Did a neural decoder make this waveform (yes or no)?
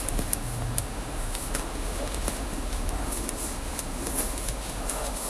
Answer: yes